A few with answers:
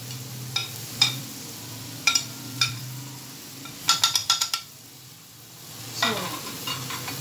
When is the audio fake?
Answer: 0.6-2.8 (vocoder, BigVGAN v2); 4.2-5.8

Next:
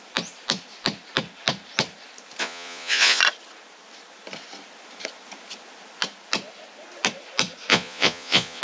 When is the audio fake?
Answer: 2.4-3.2 (vocoder, Vocos); 7.7-8.6

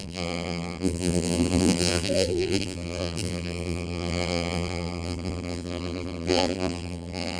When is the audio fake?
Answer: 0.0-7.4 (vocoder, BigVGAN v2)